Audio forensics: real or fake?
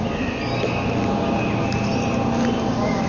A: real